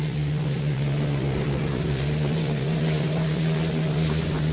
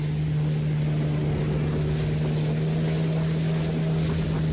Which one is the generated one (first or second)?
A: first